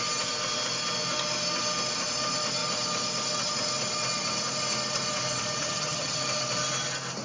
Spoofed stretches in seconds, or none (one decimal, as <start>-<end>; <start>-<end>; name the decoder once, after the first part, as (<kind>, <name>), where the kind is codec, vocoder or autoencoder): 5.6-6.2 (vocoder, HiFi-GAN)